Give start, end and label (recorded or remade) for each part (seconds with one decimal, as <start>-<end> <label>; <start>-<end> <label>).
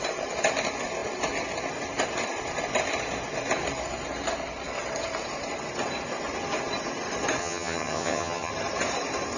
0.0-7.4 recorded; 7.4-8.5 remade; 8.5-9.4 recorded